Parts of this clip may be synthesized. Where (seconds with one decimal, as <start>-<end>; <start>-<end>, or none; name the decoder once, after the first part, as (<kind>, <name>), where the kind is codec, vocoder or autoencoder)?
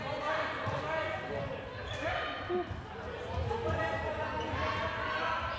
none